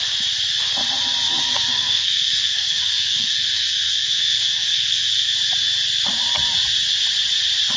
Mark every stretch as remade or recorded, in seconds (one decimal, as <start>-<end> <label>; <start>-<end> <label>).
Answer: 0.0-1.4 recorded; 1.4-5.3 remade; 5.3-7.8 recorded

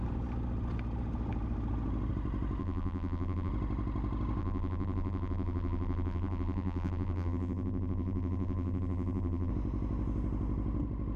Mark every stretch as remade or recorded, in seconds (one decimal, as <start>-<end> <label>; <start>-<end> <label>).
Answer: 0.0-2.6 recorded; 2.6-3.5 remade; 3.5-4.4 recorded; 4.4-9.5 remade; 9.5-11.2 recorded